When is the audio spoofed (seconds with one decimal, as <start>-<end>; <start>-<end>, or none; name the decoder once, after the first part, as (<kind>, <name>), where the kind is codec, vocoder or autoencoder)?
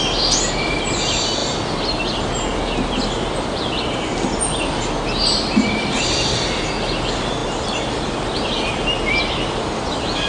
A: none